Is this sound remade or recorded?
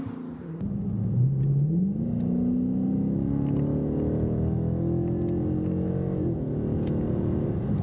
recorded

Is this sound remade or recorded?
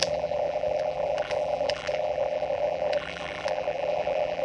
remade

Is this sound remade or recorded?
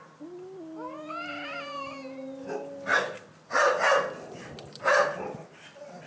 recorded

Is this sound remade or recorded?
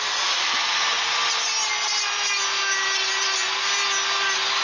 recorded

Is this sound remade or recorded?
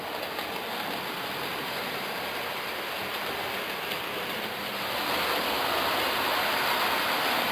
recorded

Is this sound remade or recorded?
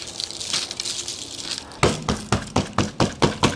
recorded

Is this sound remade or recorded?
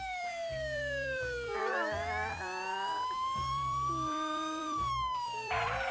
remade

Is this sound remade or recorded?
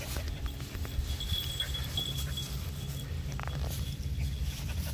remade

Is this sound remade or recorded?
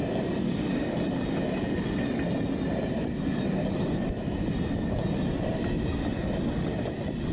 recorded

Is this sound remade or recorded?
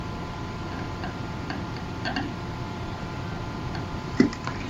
remade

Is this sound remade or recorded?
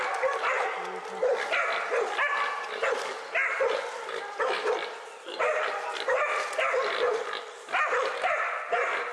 remade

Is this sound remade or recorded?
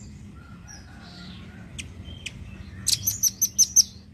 recorded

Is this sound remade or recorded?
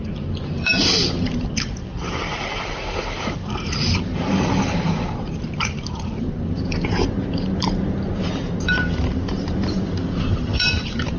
remade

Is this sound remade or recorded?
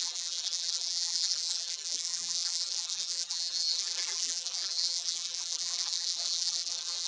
remade